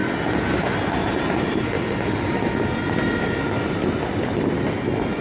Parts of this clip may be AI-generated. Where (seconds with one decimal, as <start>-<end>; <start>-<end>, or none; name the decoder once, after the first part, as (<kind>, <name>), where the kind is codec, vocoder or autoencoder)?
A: none